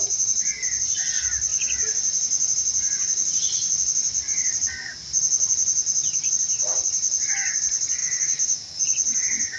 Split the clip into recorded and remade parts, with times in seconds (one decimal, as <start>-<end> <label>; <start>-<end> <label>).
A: 0.0-8.0 recorded; 8.0-8.8 remade; 8.8-9.6 recorded